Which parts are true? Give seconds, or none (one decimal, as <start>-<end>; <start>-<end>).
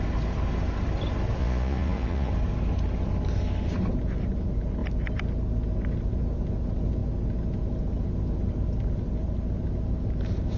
0.0-1.4; 2.3-10.6